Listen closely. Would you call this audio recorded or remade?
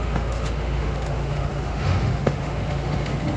remade